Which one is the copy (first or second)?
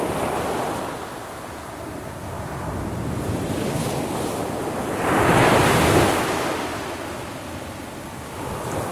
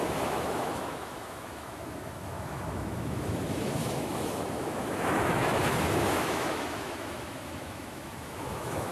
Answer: second